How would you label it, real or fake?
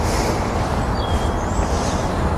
fake